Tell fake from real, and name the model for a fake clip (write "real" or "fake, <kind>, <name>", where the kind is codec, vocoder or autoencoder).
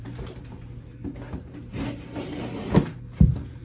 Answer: fake, vocoder, BigVGAN v2